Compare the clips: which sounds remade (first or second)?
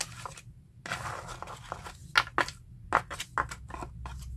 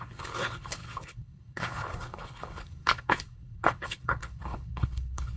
second